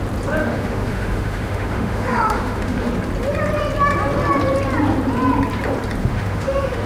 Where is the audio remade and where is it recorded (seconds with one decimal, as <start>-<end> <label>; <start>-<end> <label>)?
0.0-0.4 recorded; 0.4-2.9 remade; 2.9-6.0 recorded; 6.0-6.9 remade

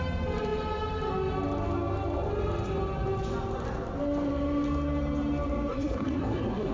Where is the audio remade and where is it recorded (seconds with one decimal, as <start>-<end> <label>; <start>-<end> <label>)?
0.0-5.7 recorded; 5.7-6.7 remade

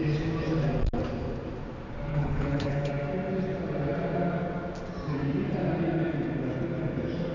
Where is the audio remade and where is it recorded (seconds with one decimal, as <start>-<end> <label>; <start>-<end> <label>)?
0.0-2.1 recorded; 2.1-2.9 remade; 2.9-7.3 recorded